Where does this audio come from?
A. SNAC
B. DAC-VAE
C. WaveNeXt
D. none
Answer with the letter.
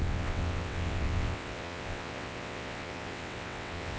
C